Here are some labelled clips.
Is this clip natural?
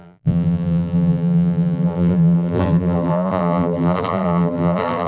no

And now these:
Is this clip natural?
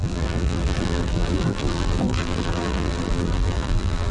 no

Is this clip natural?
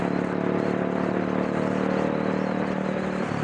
yes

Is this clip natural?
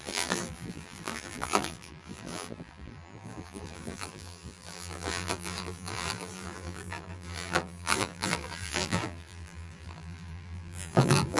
no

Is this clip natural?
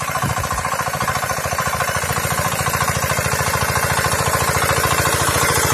no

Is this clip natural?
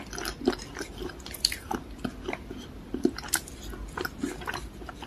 no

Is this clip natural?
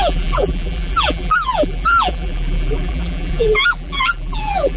no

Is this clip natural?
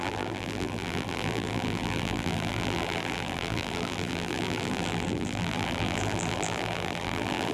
no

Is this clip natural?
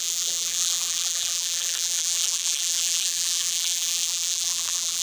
no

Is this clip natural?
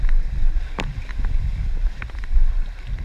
no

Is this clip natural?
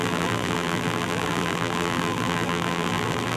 no